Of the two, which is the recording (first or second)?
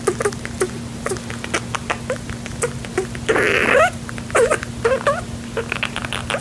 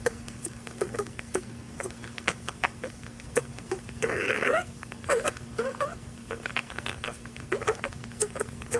first